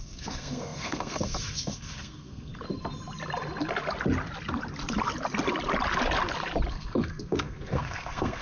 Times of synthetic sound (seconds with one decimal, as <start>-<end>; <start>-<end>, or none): 0.0-2.5; 6.7-8.4